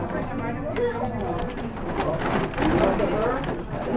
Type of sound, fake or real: real